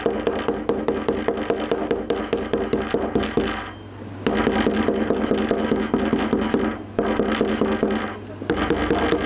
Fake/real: real